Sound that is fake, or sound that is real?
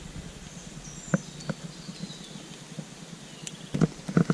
real